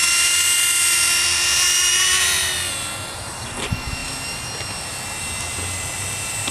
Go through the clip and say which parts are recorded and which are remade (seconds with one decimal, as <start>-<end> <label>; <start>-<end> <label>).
0.0-6.5 recorded